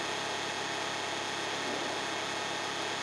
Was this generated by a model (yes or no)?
no